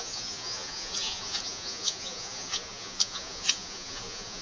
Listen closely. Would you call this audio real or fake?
fake